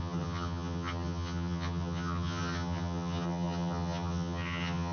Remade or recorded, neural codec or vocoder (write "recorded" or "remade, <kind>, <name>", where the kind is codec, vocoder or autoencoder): remade, vocoder, HiFi-GAN